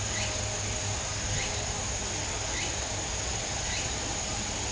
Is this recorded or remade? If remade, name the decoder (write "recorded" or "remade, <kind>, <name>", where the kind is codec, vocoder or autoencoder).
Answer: recorded